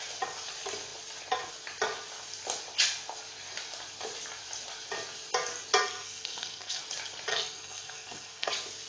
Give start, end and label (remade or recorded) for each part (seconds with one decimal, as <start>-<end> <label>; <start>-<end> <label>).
0.0-5.9 recorded; 5.9-6.8 remade; 6.8-7.3 recorded; 7.3-8.5 remade; 8.5-8.9 recorded